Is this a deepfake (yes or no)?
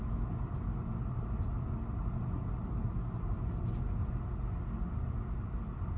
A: no